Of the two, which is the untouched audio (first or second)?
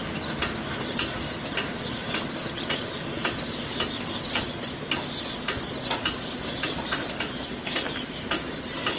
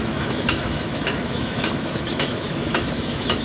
first